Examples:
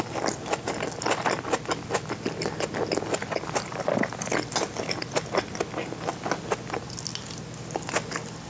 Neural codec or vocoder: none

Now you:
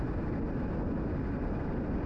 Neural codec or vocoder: none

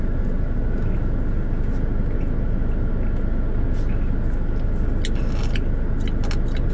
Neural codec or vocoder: none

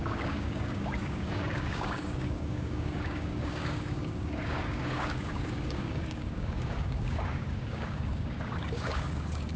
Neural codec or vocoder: codec, DAC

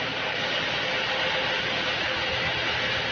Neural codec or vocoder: none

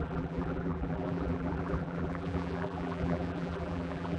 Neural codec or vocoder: vocoder, BigVGAN v2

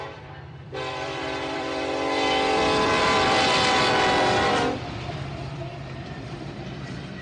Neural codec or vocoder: vocoder, BigVGAN v2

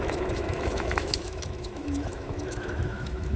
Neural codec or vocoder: autoencoder, DAC-VAE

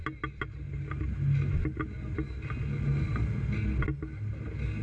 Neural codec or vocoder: none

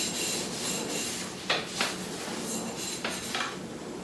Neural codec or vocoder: none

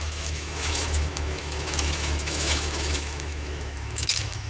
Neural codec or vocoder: autoencoder, DAC-VAE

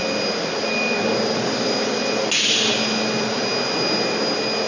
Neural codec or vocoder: none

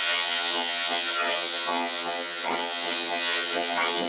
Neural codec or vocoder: vocoder, HiFi-GAN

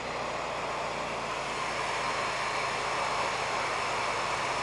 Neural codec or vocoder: none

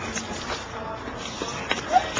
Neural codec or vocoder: none